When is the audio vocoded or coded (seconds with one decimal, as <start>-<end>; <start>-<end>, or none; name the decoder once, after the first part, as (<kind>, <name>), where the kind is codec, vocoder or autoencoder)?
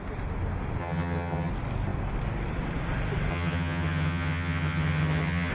0.8-1.5 (vocoder, HiFi-GAN); 3.3-5.5